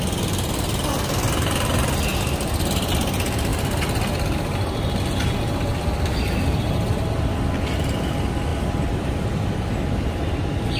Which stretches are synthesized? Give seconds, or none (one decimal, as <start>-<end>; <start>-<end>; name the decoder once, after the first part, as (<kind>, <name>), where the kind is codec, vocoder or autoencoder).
none